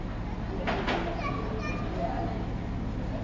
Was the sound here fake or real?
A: real